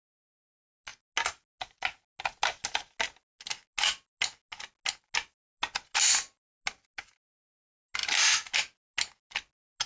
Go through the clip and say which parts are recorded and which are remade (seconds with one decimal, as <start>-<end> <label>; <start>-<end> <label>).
0.0-9.9 recorded

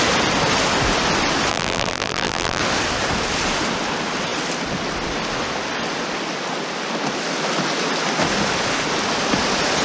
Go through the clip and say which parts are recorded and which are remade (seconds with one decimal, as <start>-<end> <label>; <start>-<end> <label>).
0.0-1.5 recorded; 1.5-2.6 remade; 2.6-9.8 recorded

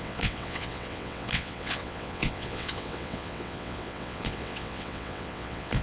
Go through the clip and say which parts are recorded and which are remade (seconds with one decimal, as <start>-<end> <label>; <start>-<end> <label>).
0.0-5.8 remade

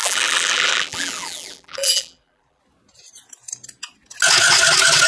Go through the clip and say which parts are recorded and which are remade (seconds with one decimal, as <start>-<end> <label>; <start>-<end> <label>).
0.0-2.6 remade; 2.6-5.1 recorded

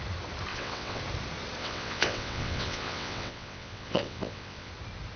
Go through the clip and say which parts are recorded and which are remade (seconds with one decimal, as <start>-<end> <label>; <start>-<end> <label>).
0.0-0.5 recorded; 0.5-1.0 remade; 1.0-1.6 recorded; 1.6-4.7 remade; 4.7-5.2 recorded

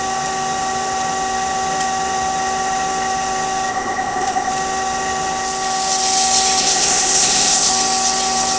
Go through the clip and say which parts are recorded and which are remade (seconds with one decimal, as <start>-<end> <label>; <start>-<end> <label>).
0.0-3.7 recorded; 3.7-4.5 remade; 4.5-6.6 recorded; 6.6-7.7 remade; 7.7-8.6 recorded

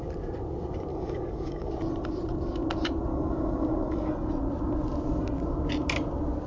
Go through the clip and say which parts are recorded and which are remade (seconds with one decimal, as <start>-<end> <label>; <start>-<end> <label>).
0.0-0.9 recorded; 0.9-1.7 remade; 1.7-3.1 recorded; 3.1-4.1 remade; 4.1-6.5 recorded